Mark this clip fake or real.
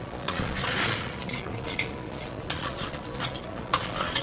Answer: fake